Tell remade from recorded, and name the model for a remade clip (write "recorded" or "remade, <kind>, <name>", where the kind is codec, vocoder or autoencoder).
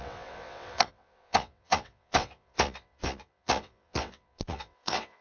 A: remade, vocoder, WaveNeXt